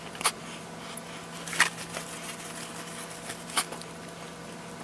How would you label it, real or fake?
real